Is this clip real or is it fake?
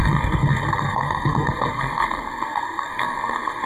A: fake